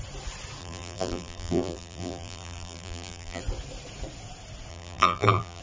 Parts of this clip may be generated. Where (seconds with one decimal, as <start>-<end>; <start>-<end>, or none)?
0.6-3.4; 4.7-5.6